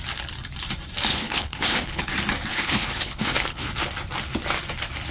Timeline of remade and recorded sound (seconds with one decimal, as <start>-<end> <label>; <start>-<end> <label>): 0.0-1.1 recorded; 1.1-2.0 remade; 2.0-2.5 recorded; 2.5-3.7 remade; 3.7-5.1 recorded